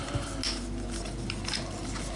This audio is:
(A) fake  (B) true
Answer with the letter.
B